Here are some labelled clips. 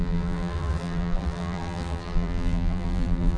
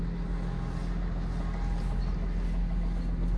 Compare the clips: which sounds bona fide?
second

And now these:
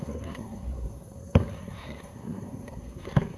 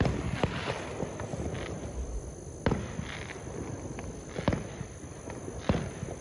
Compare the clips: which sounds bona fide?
second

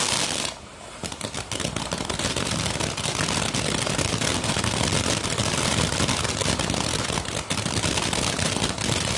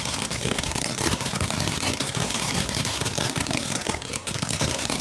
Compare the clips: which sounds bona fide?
first